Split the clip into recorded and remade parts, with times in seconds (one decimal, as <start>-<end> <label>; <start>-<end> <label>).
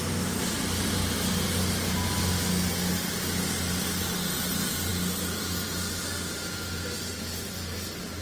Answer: 0.0-8.2 recorded